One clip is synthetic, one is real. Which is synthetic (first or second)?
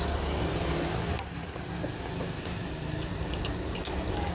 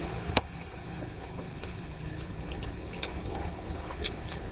second